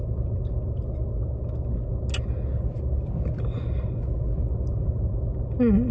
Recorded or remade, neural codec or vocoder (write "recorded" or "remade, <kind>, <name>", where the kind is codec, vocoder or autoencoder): recorded